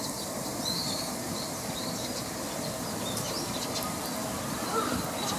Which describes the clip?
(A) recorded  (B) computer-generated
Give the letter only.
B